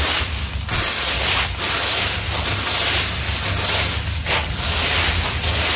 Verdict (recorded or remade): recorded